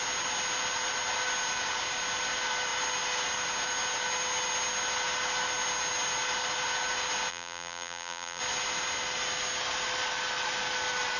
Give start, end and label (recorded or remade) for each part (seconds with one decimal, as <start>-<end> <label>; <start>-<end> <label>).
0.0-7.3 recorded; 7.3-8.4 remade; 8.4-11.2 recorded